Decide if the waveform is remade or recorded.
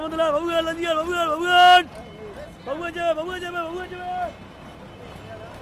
recorded